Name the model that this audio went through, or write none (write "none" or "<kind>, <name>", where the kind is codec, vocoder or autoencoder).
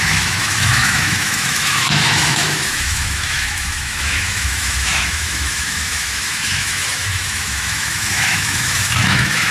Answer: autoencoder, DAC-VAE